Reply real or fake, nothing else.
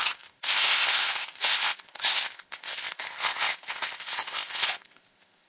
fake